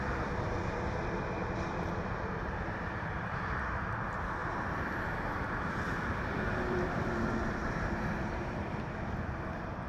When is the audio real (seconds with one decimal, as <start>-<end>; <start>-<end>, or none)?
4.4-5.2